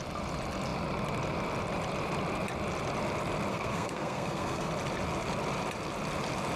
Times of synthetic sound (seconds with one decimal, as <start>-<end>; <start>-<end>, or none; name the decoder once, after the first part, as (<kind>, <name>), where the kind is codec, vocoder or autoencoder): 3.5-4.7 (codec, SNAC)